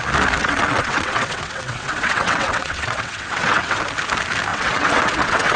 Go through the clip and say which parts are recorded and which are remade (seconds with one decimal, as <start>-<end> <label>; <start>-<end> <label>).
0.0-0.4 recorded; 0.4-3.8 remade; 3.8-4.5 recorded; 4.5-5.6 remade